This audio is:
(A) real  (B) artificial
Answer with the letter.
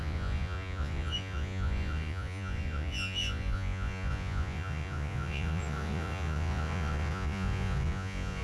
B